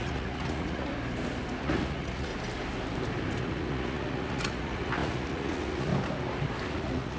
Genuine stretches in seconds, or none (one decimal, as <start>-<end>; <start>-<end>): 0.9-1.6; 2.3-3.4; 5.9-6.7